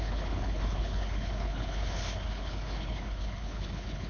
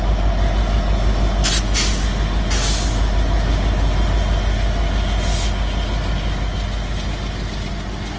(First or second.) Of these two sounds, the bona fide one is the second